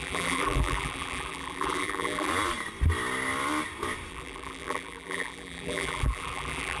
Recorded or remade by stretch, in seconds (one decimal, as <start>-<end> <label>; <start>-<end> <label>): 0.0-2.3 remade; 2.3-4.1 recorded; 4.1-6.8 remade